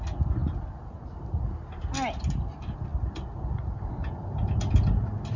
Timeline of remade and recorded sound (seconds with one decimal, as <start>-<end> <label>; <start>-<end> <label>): 0.0-5.4 recorded